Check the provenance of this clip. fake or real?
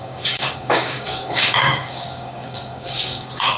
fake